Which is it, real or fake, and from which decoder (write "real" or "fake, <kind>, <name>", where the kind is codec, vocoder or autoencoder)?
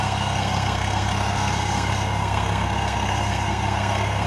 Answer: fake, codec, SNAC